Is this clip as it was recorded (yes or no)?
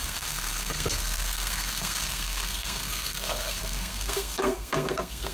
no